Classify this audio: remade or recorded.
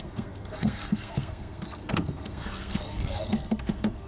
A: remade